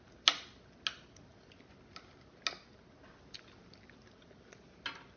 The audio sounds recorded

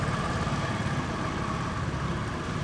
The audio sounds recorded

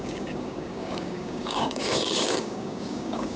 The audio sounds remade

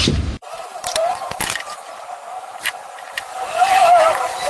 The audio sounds remade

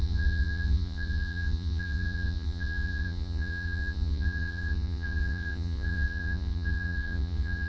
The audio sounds remade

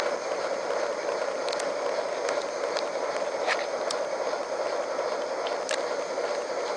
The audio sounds recorded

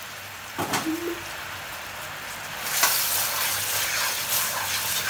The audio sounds recorded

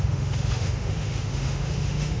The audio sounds remade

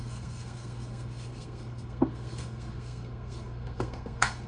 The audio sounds remade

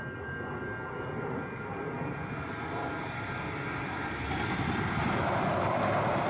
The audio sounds recorded